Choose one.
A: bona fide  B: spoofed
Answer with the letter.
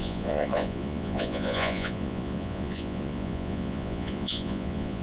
B